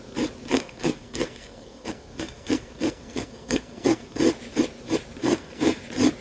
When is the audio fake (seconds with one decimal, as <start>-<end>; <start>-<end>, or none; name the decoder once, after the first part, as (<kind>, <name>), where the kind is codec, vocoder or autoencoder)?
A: 0.5-4.2 (codec, SNAC); 5.2-5.8